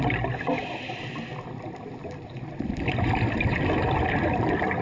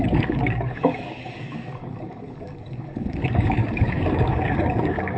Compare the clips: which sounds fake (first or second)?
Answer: second